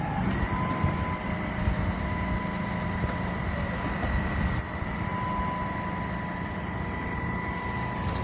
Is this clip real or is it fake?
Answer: real